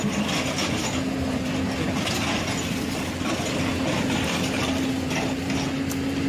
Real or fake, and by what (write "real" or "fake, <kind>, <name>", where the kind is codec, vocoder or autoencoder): real